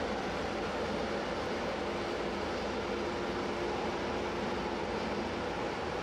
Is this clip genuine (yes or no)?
yes